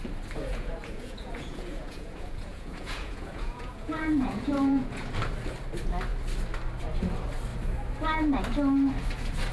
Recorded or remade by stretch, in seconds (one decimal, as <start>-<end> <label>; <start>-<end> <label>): 0.0-0.5 recorded; 0.5-5.1 remade; 5.1-9.5 recorded